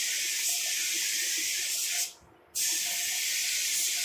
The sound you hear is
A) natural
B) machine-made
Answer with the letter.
A